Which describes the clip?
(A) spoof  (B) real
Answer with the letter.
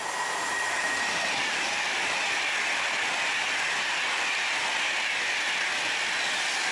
A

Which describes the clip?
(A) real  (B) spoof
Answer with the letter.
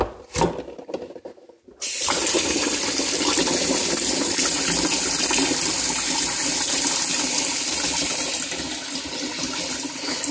A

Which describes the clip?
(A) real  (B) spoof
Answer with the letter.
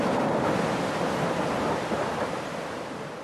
B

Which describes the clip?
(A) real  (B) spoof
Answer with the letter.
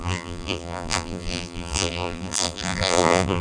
B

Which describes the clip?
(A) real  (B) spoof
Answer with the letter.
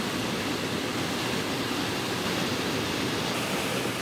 A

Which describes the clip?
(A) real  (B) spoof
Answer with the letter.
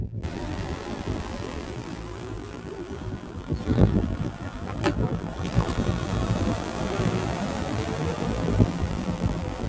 B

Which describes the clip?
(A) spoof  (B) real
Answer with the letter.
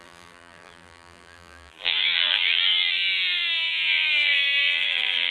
A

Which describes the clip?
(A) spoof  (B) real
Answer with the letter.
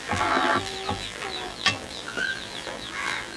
A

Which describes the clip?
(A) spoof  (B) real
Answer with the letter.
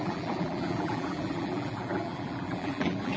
A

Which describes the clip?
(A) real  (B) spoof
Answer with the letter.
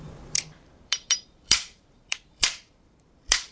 B